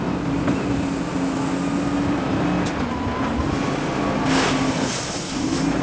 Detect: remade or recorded recorded